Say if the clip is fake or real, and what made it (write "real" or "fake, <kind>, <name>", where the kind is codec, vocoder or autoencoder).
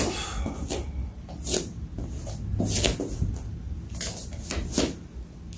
real